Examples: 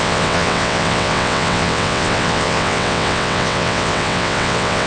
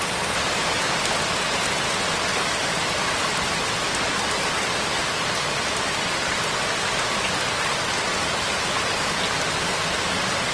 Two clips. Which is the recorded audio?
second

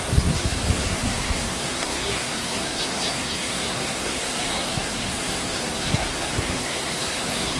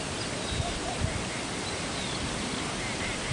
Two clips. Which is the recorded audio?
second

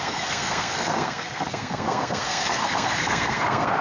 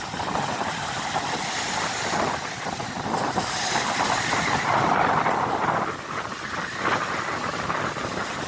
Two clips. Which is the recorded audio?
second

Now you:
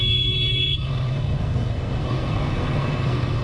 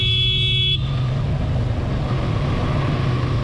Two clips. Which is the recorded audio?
second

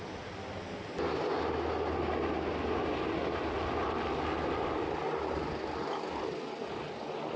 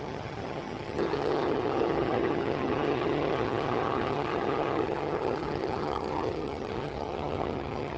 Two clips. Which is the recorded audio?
first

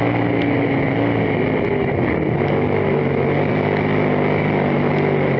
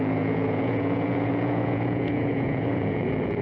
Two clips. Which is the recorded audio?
first